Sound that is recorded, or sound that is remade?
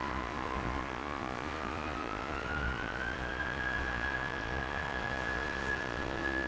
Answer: remade